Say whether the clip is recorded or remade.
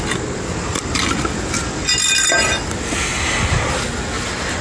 recorded